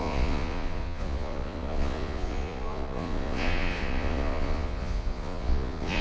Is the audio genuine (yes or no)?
no